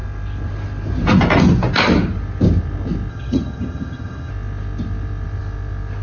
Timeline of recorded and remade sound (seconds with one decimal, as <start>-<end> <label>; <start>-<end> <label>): 0.0-3.1 recorded; 3.1-4.3 remade; 4.3-6.0 recorded